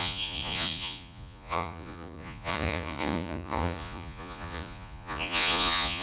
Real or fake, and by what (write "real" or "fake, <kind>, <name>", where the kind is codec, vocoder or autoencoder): fake, vocoder, Vocos